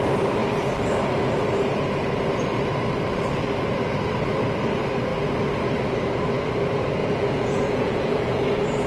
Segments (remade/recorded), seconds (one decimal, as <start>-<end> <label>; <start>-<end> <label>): 0.0-7.0 recorded; 7.0-8.4 remade; 8.4-8.9 recorded

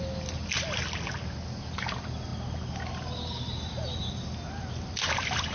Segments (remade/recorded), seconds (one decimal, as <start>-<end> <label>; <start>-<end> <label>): 0.0-5.5 recorded

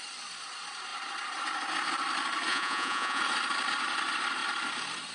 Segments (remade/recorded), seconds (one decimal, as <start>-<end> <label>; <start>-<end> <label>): 0.0-2.5 recorded; 2.5-3.2 remade; 3.2-5.1 recorded

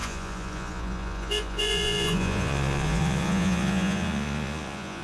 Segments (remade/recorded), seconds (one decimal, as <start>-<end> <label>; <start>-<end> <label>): 0.0-5.0 remade

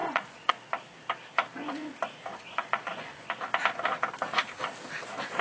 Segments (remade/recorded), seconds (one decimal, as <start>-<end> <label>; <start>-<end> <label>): 0.0-0.5 remade; 0.5-2.3 recorded; 2.3-3.3 remade; 3.3-5.4 recorded

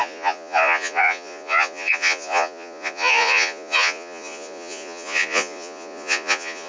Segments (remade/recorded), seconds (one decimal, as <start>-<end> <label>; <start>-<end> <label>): 0.0-6.7 remade